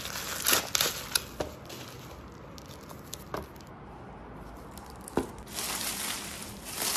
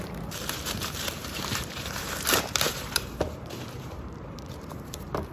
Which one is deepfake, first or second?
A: second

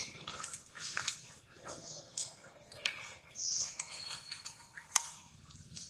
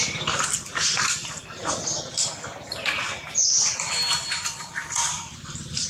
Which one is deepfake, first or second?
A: first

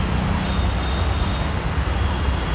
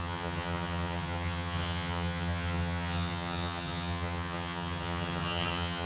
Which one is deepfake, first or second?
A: second